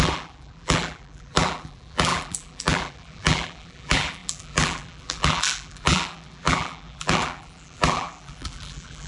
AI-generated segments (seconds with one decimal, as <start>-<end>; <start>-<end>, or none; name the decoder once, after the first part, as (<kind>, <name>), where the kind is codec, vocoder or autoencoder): 0.0-9.1 (vocoder, BigVGAN v2)